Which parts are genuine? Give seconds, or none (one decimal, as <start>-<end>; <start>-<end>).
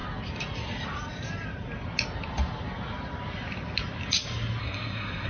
0.0-4.6